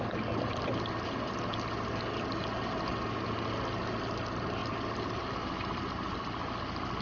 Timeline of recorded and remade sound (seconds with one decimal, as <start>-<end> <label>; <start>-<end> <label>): 0.0-7.0 recorded